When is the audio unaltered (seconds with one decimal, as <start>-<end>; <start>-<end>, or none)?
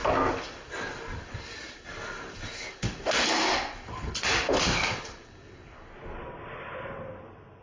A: 0.0-7.6